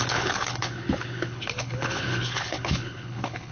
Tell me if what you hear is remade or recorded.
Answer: remade